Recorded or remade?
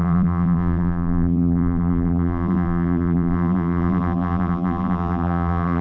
remade